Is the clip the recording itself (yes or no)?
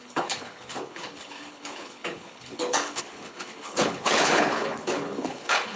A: no